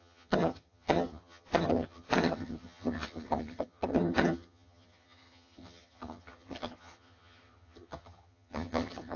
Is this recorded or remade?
remade